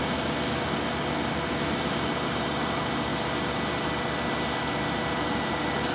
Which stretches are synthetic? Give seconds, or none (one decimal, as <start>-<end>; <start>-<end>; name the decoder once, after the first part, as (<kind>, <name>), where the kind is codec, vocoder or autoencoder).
none